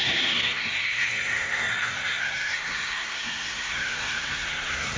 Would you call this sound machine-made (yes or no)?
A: yes